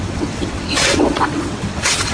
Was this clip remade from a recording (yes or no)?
yes